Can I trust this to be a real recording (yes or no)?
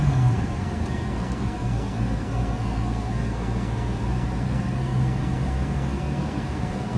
no